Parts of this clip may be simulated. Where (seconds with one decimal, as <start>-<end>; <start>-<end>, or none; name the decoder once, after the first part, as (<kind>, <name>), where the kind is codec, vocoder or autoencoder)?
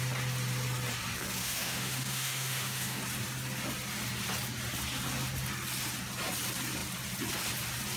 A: 1.4-3.0 (autoencoder, DAC-VAE)